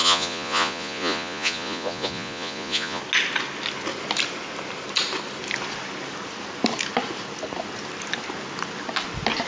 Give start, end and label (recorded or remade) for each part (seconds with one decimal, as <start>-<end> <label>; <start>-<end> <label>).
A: 0.0-3.0 remade; 3.0-9.5 recorded